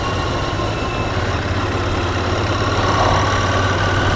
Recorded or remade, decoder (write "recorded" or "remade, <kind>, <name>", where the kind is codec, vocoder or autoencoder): recorded